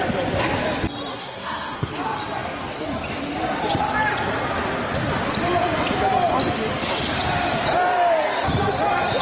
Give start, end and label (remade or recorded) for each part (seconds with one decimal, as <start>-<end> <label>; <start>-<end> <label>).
0.0-1.1 recorded; 1.1-1.9 remade; 1.9-9.2 recorded